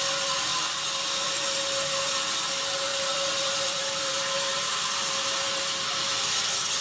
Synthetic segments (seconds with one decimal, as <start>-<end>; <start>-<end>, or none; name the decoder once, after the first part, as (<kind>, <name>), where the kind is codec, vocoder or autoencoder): 0.5-1.4 (vocoder, BigVGAN v2); 2.9-6.8